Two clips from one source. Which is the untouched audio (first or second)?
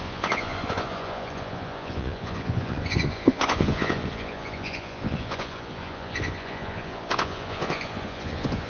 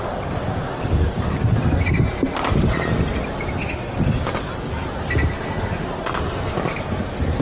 second